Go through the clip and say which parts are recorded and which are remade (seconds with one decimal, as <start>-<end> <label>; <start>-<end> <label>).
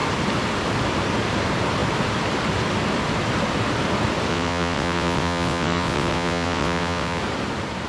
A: 0.0-4.3 recorded; 4.3-7.2 remade; 7.2-7.9 recorded